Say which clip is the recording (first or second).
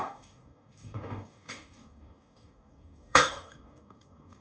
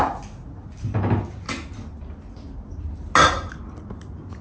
second